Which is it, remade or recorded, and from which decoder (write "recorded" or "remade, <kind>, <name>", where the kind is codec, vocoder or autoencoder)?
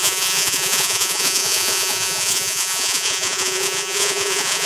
remade, vocoder, Vocos